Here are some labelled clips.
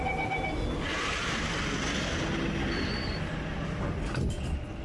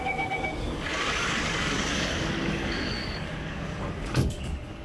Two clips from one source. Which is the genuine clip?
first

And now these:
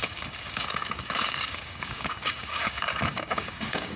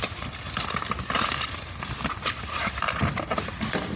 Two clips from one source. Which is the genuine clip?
second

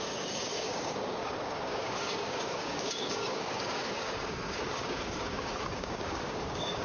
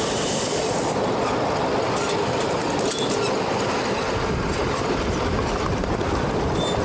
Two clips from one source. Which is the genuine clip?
second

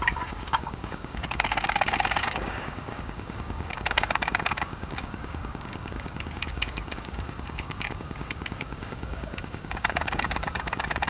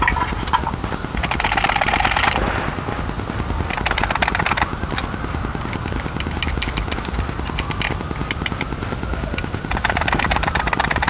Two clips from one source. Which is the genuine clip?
second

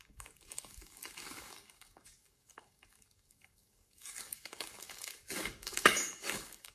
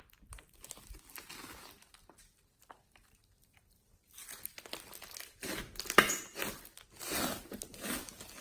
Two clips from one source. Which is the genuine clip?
second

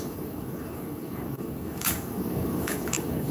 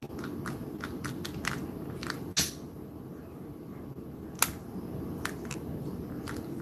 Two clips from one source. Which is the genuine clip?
second